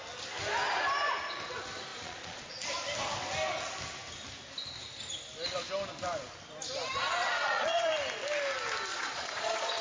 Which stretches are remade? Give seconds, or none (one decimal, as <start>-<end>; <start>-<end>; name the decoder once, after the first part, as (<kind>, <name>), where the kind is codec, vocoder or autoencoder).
1.9-2.5 (vocoder, Vocos); 7.2-7.9; 8.9-9.8

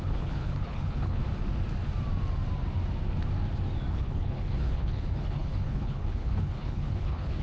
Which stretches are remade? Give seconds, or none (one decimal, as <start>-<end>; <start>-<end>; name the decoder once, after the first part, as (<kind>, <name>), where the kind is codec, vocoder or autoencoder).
0.0-1.2 (codec, HILCodec); 3.9-7.4

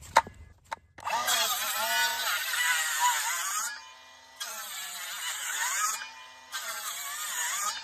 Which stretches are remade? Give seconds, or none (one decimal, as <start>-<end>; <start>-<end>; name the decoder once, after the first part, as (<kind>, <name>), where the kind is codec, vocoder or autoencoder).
6.5-7.0 (vocoder, BigVGAN v2)

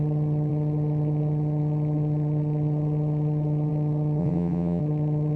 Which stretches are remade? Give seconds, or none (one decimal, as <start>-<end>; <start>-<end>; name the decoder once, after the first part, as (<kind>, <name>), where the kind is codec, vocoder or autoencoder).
4.2-4.8 (vocoder, WaveNeXt)